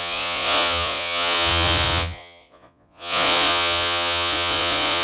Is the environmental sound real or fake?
fake